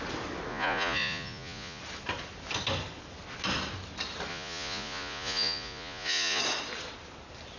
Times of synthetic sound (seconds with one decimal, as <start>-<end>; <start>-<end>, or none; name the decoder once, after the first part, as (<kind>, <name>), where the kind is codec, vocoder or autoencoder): 0.5-1.8 (vocoder, Vocos); 4.3-6.4